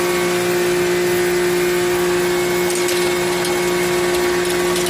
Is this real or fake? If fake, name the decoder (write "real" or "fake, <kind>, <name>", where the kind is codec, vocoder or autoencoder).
real